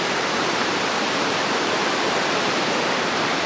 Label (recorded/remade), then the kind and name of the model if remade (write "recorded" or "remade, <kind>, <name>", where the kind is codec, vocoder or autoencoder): remade, vocoder, BigVGAN v2